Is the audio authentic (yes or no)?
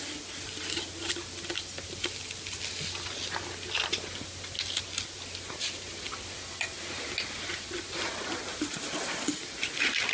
yes